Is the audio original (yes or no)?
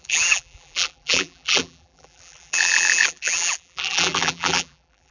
no